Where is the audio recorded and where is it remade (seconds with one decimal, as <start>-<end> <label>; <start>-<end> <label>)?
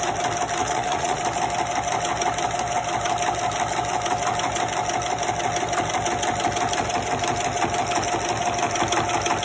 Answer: 0.0-0.6 recorded; 0.6-1.2 remade; 1.2-9.4 recorded